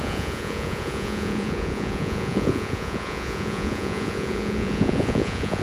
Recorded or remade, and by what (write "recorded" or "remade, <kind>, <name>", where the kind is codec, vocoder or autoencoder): remade, vocoder, Vocos